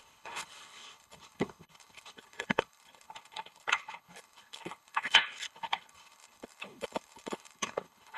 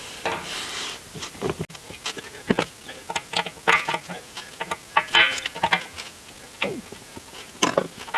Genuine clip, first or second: second